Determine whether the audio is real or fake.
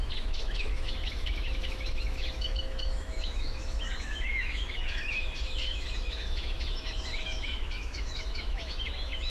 fake